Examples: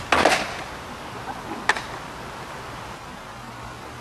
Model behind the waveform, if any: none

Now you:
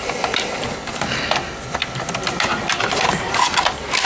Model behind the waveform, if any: none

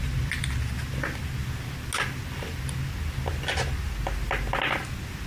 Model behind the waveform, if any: none